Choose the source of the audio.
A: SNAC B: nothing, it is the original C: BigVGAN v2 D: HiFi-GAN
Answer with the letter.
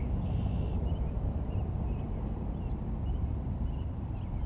C